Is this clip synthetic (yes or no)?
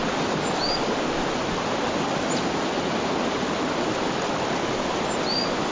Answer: no